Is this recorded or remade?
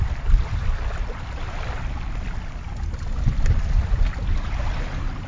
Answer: recorded